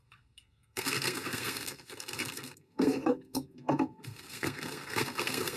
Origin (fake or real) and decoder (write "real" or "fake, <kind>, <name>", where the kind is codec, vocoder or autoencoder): fake, codec, SNAC